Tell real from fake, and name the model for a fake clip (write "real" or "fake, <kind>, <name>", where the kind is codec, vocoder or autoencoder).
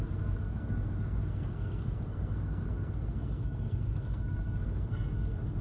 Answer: fake, codec, SNAC